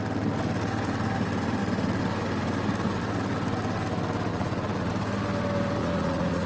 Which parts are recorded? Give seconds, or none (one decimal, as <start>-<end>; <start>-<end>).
0.0-4.3; 4.9-5.8